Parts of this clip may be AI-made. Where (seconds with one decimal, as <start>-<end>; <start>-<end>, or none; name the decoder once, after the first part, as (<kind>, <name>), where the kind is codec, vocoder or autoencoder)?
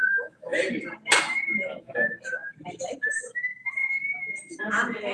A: 0.0-0.5 (autoencoder, DAC-VAE); 1.2-2.4; 3.1-5.1